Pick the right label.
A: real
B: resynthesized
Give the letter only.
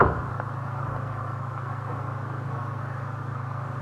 B